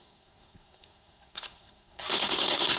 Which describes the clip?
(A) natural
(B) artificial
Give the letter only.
B